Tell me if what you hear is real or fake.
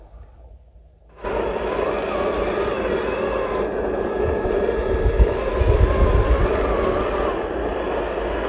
real